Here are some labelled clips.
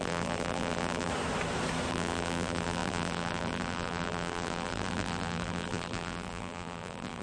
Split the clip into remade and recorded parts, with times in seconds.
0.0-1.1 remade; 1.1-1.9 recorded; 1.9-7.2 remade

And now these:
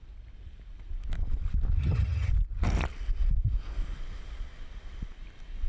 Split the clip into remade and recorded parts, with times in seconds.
0.0-1.8 recorded; 1.8-2.3 remade; 2.3-5.7 recorded

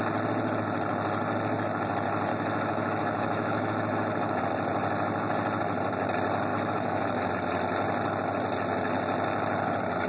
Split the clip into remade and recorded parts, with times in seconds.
0.0-2.3 recorded; 2.3-4.4 remade; 4.4-6.5 recorded; 6.5-7.3 remade; 7.3-10.1 recorded

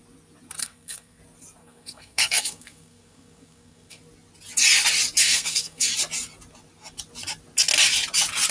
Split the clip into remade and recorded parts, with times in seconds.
0.0-0.6 recorded; 0.6-1.2 remade; 1.2-1.6 recorded; 1.6-4.0 remade; 4.0-5.2 recorded; 5.2-5.9 remade; 5.9-8.5 recorded

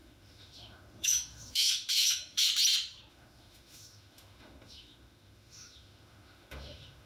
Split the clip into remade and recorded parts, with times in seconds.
0.0-2.5 remade; 2.5-3.1 recorded; 3.1-7.1 remade

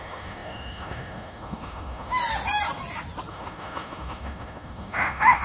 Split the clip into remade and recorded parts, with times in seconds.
0.0-2.2 remade; 2.2-3.3 recorded; 3.3-5.4 remade

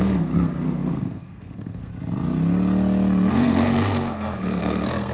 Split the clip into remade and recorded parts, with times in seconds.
0.0-1.9 remade; 1.9-3.3 recorded; 3.3-5.1 remade